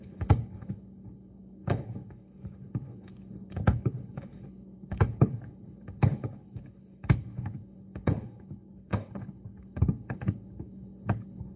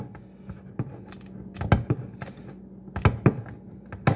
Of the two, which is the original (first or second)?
second